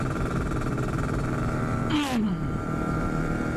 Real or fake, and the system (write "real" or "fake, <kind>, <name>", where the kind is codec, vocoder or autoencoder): fake, vocoder, BigVGAN v2